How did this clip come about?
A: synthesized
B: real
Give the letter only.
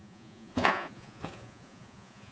A